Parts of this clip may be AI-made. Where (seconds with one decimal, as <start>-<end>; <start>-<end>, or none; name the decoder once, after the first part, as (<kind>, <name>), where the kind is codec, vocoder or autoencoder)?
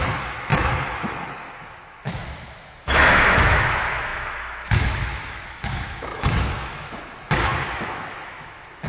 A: 0.0-7.5 (autoencoder, DAC-VAE); 8.1-8.9